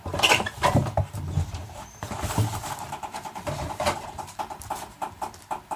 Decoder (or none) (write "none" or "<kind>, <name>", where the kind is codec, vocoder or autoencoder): vocoder, BigVGAN v2